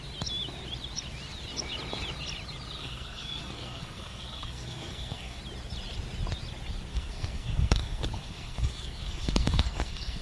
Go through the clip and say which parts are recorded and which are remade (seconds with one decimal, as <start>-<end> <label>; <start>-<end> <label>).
0.0-2.8 recorded; 2.8-5.4 remade; 5.4-6.9 recorded; 6.9-10.2 remade